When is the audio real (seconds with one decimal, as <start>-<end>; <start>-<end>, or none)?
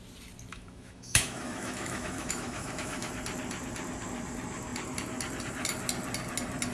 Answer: 0.0-0.5; 3.1-6.7